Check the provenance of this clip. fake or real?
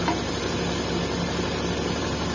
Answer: real